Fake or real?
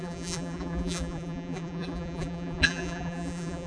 fake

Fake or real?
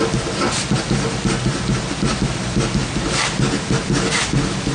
real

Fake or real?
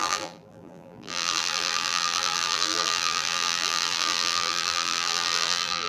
fake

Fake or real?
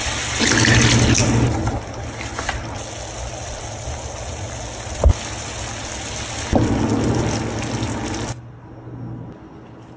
real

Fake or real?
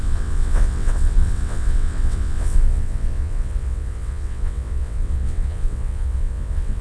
fake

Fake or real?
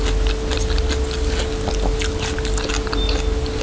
real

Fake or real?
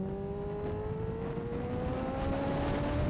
real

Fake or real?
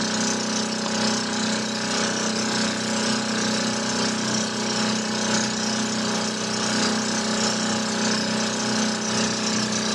real